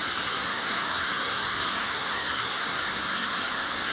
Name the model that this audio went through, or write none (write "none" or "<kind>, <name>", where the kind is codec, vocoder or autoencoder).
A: codec, SNAC